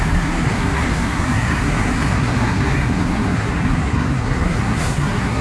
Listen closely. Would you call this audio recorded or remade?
remade